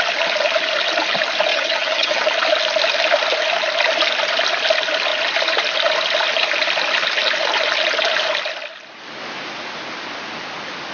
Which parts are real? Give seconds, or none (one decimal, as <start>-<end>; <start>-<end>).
0.0-1.5; 2.3-10.9